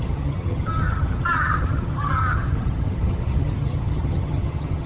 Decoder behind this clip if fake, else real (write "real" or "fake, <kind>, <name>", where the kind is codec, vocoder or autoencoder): fake, vocoder, HiFi-GAN